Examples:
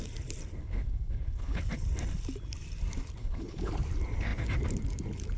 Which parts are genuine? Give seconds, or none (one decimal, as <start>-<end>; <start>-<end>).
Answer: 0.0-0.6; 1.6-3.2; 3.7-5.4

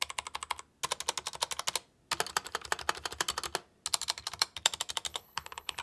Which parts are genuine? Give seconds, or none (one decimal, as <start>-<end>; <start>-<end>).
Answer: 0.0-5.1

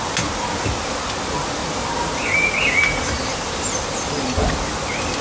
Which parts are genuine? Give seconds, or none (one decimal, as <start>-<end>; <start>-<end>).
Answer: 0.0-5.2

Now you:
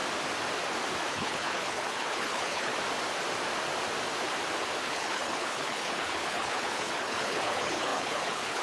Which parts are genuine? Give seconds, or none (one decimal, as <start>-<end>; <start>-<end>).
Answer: 0.0-1.1; 2.7-4.8

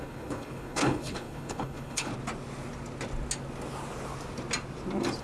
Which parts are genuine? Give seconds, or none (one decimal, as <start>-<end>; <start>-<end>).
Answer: 2.1-5.2

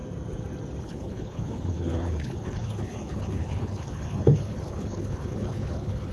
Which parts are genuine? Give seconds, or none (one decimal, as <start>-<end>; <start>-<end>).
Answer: 0.0-0.8